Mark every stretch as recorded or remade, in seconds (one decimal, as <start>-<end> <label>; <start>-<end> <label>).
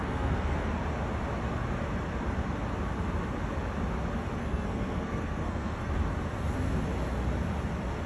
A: 0.0-0.7 remade; 0.7-4.4 recorded; 4.4-5.9 remade; 5.9-8.1 recorded